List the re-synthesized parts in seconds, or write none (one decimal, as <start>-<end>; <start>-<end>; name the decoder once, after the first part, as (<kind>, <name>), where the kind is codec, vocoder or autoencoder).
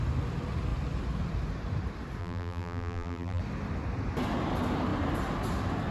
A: 2.2-3.4 (vocoder, BigVGAN v2)